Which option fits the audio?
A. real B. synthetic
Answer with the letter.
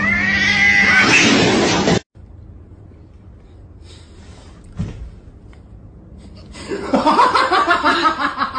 A